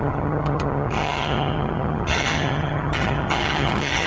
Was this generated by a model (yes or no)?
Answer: yes